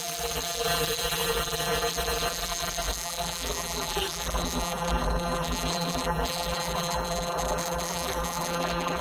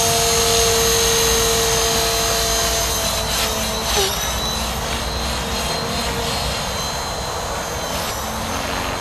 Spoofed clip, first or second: first